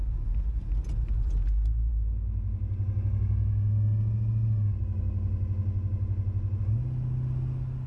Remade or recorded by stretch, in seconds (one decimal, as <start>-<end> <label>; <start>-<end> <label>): 0.0-7.9 recorded